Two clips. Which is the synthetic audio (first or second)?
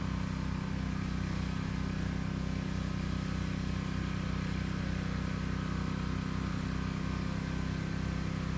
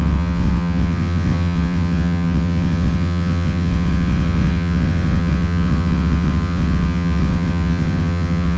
second